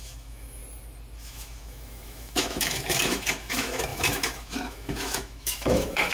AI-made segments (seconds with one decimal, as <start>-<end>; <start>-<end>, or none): 0.0-0.6; 1.2-6.1